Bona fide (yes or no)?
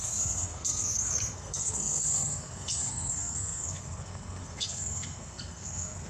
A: no